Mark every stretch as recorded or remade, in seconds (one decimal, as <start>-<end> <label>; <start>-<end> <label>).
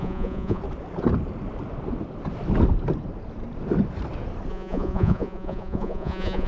0.0-0.6 remade; 0.6-4.5 recorded; 4.5-6.5 remade